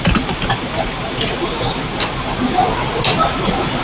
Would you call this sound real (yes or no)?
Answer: yes